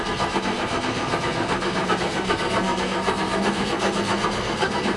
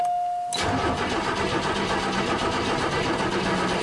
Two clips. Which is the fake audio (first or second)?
first